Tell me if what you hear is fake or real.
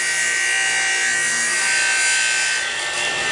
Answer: real